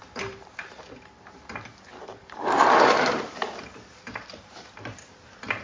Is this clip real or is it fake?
fake